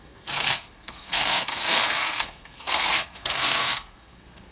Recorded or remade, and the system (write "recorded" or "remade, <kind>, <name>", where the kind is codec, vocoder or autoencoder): remade, codec, SNAC